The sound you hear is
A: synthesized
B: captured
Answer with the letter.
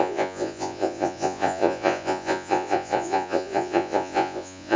A